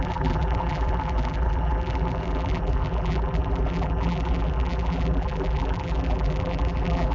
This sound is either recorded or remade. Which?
remade